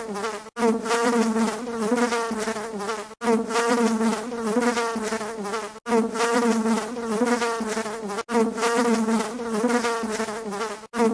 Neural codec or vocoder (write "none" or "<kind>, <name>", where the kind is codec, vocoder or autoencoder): none